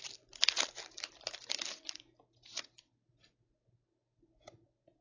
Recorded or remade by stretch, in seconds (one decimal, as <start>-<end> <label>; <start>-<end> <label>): 0.0-5.0 recorded